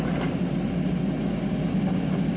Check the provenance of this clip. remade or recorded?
recorded